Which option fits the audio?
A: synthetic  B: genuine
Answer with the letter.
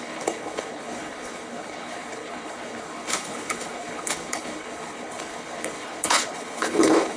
A